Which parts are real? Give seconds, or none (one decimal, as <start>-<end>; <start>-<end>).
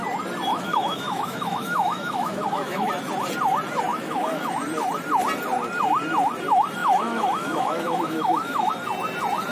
0.0-0.5; 2.9-3.9; 4.5-6.8; 8.7-9.5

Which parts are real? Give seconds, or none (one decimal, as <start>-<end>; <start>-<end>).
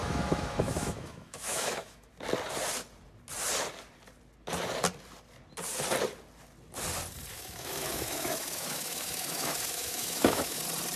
2.1-7.3; 10.6-11.0